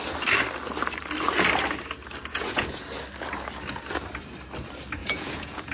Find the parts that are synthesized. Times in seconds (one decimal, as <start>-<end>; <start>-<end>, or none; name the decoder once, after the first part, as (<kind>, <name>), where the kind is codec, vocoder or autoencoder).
2.3-2.8 (vocoder, Vocos); 5.0-5.7